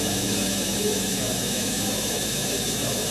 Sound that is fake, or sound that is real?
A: fake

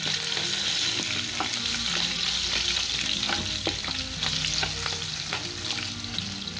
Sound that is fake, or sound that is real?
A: real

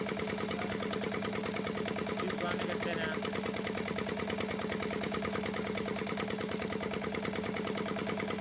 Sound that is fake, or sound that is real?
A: real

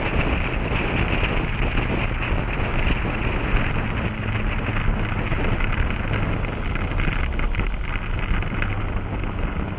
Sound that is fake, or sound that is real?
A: real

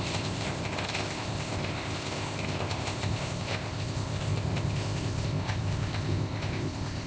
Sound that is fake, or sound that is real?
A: fake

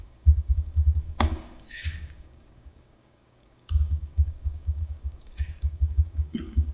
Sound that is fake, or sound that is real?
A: fake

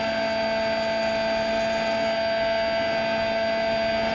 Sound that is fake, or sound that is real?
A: real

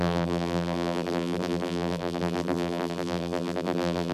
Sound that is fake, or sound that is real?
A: fake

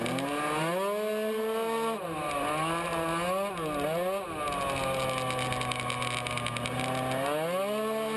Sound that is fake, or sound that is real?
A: real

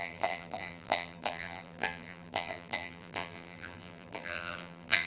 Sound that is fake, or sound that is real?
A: fake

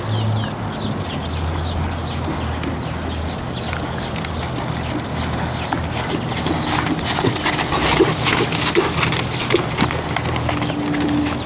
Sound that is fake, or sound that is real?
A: real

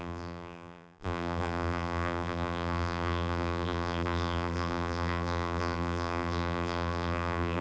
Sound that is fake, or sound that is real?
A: fake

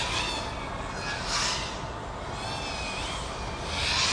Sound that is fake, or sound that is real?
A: real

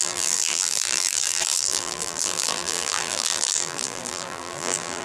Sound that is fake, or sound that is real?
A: fake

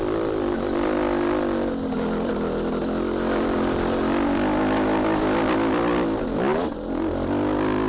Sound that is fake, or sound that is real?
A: real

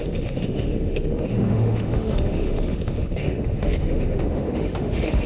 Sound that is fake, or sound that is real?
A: fake